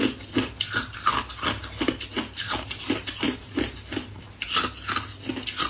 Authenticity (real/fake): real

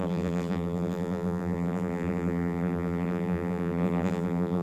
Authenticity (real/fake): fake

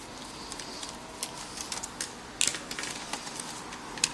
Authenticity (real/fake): real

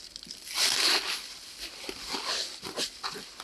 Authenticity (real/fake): real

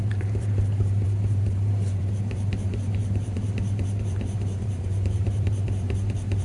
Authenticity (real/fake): fake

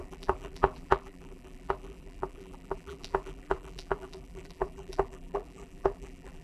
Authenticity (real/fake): fake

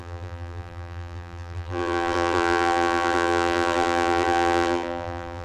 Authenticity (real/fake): fake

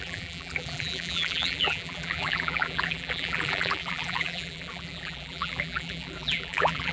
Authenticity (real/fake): fake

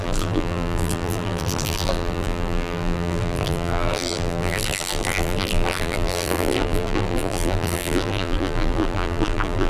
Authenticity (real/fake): fake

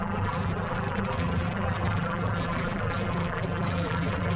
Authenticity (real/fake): fake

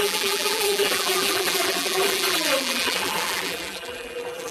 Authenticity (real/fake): fake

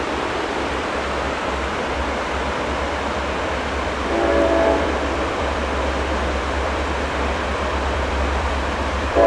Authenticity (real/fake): fake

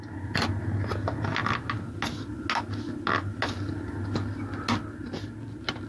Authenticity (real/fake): real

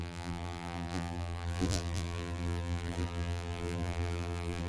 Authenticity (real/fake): fake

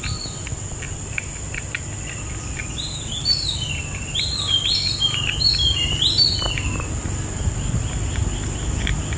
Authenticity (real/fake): fake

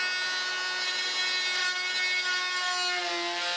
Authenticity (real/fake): real